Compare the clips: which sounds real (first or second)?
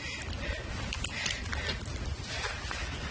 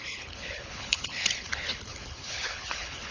first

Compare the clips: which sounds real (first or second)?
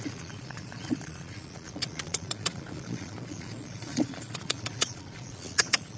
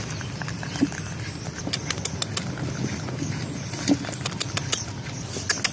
second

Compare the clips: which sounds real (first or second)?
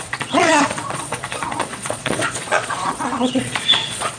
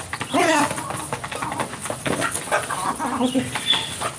second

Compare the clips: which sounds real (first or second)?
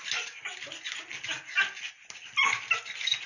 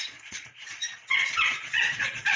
first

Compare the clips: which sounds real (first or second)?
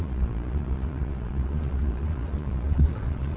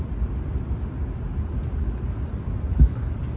second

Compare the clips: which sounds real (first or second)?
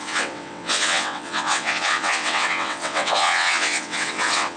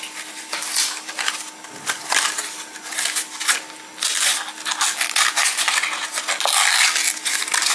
second